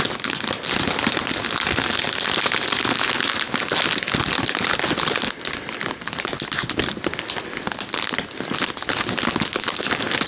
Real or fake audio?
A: real